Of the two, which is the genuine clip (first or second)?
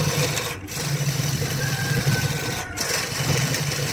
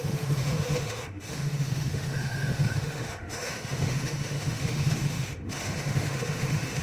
first